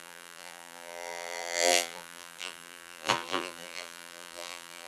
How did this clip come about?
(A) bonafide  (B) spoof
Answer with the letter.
B